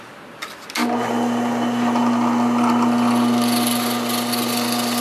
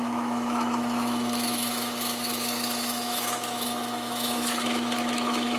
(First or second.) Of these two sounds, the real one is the first